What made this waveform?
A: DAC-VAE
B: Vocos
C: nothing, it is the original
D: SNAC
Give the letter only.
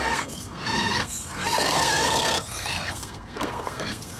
D